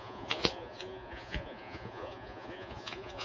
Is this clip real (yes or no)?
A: no